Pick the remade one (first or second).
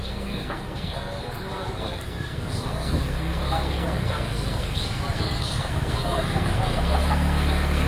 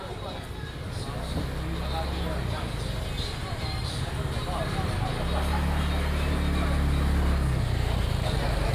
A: first